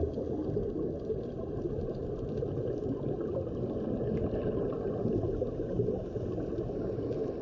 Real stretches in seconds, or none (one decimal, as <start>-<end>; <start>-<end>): 0.0-7.4